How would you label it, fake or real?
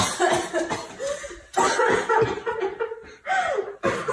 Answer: real